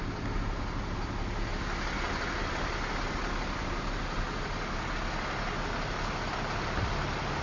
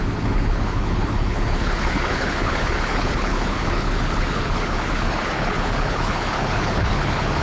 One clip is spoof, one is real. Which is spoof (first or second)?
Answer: second